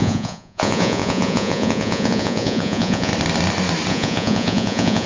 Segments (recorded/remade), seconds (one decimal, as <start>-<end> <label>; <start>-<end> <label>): 0.0-3.1 remade; 3.1-3.9 recorded; 3.9-5.1 remade